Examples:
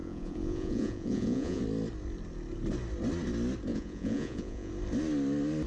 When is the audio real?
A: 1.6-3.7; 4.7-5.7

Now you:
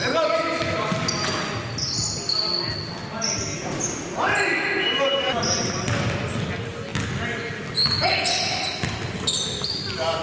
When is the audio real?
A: 0.0-10.2

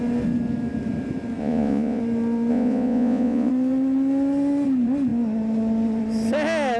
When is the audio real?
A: 0.0-1.4; 2.0-2.5; 3.5-6.8

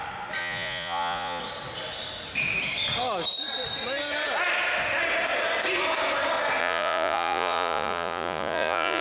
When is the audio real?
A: 0.0-0.4; 1.4-6.6